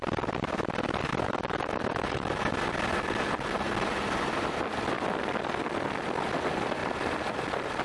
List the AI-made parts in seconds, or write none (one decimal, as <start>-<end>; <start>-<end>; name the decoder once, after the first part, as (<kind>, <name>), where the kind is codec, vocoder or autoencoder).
1.1-2.5 (autoencoder, DAC-VAE)